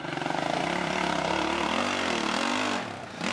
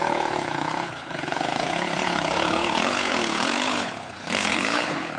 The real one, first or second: first